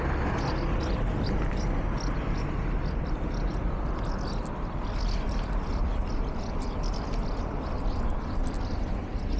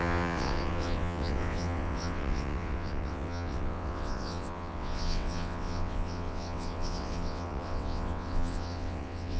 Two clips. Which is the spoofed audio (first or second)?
second